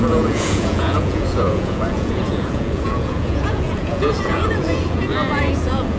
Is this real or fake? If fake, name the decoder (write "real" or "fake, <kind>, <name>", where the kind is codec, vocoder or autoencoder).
fake, vocoder, Vocos